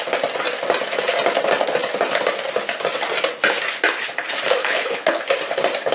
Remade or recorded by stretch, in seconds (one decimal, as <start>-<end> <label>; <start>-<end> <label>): 0.0-4.6 recorded; 4.6-5.2 remade; 5.2-5.9 recorded